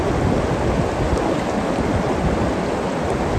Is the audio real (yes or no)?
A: yes